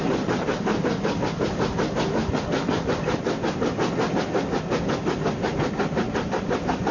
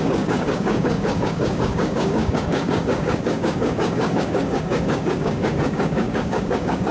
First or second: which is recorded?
first